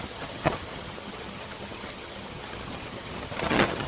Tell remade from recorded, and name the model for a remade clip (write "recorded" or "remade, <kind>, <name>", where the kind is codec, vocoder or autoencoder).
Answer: remade, vocoder, HiFi-GAN